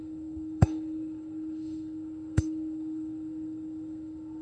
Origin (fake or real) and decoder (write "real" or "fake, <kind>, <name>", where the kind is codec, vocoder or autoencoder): fake, codec, SNAC